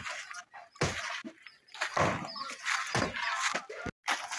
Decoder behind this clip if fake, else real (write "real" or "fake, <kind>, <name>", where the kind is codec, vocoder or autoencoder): real